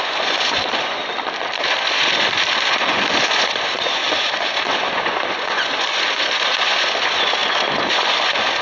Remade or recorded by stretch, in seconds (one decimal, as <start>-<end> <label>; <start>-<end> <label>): 0.0-1.0 remade; 1.0-1.6 recorded; 1.6-8.6 remade

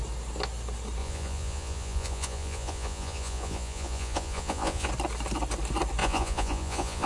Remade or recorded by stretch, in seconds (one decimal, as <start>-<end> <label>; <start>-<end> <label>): 0.0-1.0 recorded; 1.0-4.9 remade; 4.9-6.0 recorded; 6.0-7.1 remade

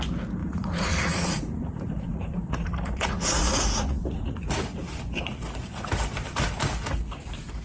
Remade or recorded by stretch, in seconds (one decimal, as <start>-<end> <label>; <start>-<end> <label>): 0.0-0.4 recorded; 0.4-4.4 remade; 4.4-7.6 recorded

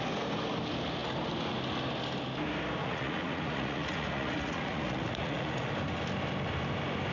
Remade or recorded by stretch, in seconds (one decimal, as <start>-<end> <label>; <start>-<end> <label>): 0.0-2.8 recorded; 2.8-5.7 remade; 5.7-7.1 recorded

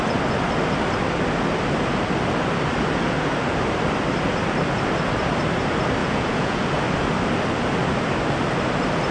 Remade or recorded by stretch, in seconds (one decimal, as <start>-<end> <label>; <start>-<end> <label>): 0.0-6.0 recorded; 6.0-6.6 remade; 6.6-9.1 recorded

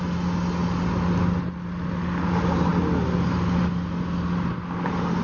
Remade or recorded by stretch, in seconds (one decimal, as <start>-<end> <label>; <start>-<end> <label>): 0.0-5.2 recorded

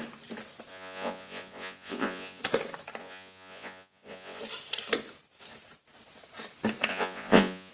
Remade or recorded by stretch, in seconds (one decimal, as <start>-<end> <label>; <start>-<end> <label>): 0.0-0.7 recorded; 0.7-2.4 remade; 2.4-3.0 recorded; 3.0-4.4 remade; 4.4-6.9 recorded; 6.9-7.7 remade

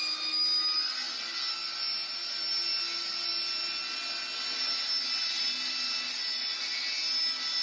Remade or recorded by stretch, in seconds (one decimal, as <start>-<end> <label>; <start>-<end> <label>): 0.0-7.6 recorded